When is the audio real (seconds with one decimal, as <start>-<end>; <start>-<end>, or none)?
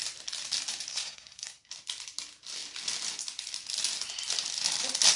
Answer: 0.0-0.9; 1.7-5.2